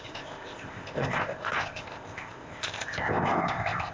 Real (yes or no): no